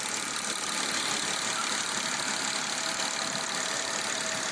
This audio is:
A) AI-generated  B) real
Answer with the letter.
B